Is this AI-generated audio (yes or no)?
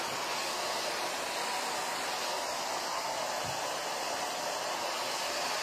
no